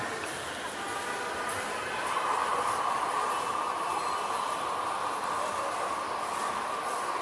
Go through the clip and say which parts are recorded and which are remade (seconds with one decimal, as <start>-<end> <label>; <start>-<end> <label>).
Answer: 0.0-7.2 recorded